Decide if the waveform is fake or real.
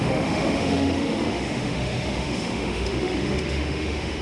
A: fake